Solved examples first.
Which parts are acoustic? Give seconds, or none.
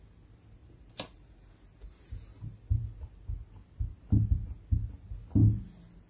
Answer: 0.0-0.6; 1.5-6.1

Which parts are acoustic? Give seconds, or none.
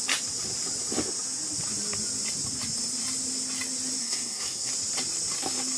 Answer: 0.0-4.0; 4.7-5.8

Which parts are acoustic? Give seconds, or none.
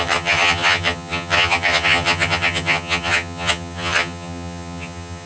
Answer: none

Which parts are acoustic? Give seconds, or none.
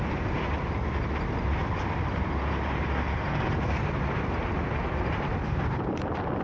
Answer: 0.0-6.4